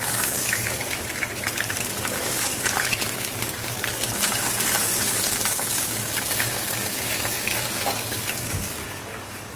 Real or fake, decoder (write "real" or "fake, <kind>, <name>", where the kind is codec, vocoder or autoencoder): fake, codec, DAC